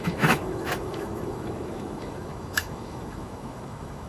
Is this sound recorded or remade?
remade